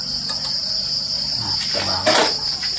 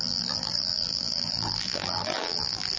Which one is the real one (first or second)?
first